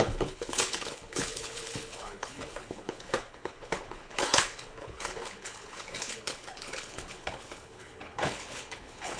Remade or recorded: remade